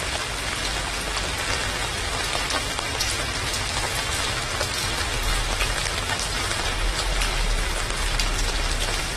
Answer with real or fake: real